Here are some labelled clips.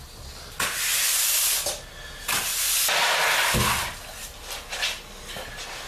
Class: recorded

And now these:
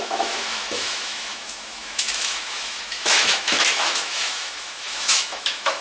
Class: remade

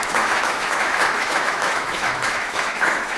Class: remade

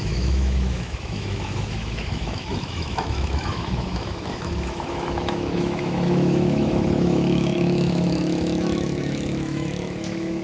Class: remade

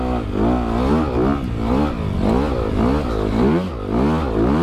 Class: recorded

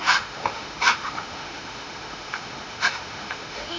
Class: remade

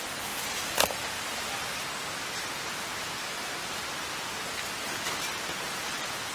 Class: recorded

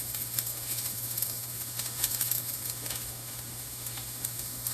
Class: remade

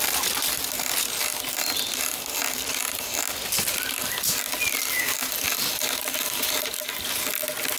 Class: recorded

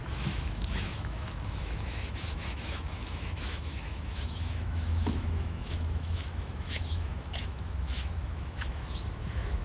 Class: remade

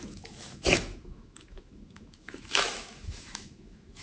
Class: remade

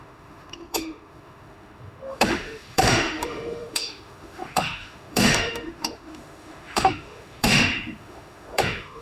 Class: remade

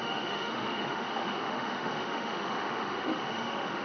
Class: remade